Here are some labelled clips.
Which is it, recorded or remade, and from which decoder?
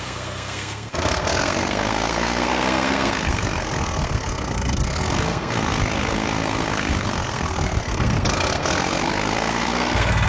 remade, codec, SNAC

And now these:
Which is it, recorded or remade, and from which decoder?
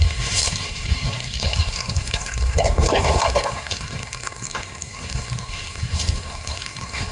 remade, codec, SNAC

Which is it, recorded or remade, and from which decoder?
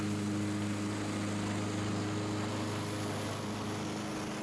recorded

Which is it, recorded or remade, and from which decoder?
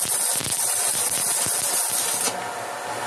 recorded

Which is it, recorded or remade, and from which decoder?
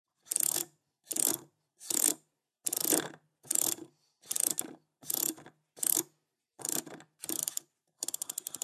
recorded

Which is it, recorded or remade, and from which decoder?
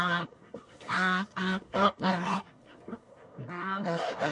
remade, codec, SNAC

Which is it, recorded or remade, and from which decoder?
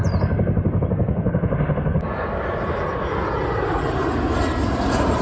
recorded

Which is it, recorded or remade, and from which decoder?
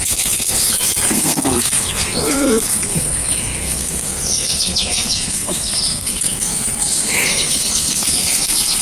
remade, codec, SNAC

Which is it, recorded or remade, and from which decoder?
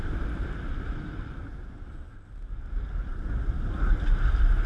recorded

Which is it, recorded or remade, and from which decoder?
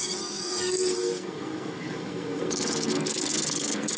remade, codec, SNAC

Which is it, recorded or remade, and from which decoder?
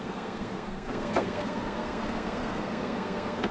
remade, codec, SNAC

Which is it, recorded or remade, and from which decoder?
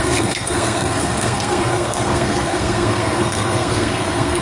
remade, codec, SNAC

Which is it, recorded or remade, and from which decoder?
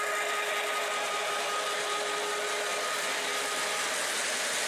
recorded